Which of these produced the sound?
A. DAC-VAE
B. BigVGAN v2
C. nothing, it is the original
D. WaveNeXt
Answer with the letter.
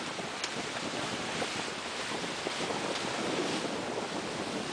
C